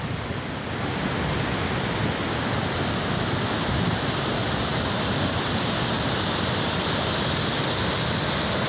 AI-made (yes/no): no